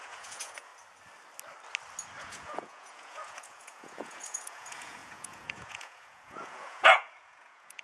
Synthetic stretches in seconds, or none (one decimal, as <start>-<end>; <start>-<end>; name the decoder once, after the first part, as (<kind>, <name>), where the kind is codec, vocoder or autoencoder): 0.0-0.7 (vocoder, Vocos); 2.2-7.8